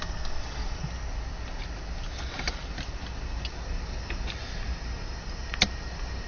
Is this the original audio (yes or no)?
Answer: yes